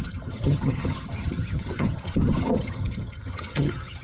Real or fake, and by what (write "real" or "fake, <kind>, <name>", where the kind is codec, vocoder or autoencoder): fake, vocoder, HiFi-GAN